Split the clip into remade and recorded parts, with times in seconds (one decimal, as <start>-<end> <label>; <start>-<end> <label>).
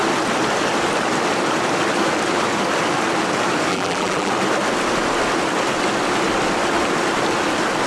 0.0-3.7 recorded; 3.7-4.3 remade; 4.3-7.9 recorded